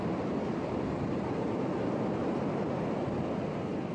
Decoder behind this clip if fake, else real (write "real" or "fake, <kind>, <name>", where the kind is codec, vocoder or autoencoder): real